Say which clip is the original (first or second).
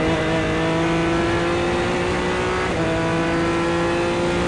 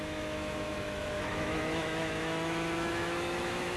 first